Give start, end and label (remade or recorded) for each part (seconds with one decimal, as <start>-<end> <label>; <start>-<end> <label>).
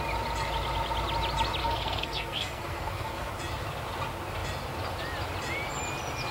0.0-1.6 recorded; 1.6-3.3 remade; 3.3-6.3 recorded